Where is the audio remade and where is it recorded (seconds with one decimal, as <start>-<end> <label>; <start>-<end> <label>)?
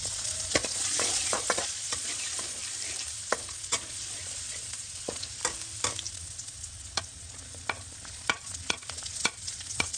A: 0.0-2.6 remade; 2.6-3.2 recorded; 3.2-5.4 remade; 5.4-6.1 recorded; 6.1-10.0 remade